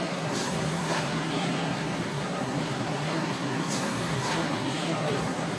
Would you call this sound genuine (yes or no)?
no